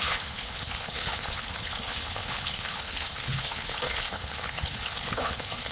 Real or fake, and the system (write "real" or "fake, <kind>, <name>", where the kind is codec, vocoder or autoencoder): fake, codec, HILCodec